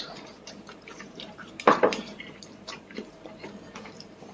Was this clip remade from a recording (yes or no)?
yes